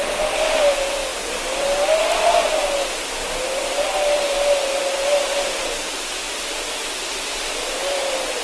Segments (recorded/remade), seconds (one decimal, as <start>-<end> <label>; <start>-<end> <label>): 0.0-8.4 recorded